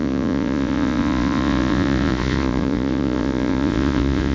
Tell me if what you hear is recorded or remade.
remade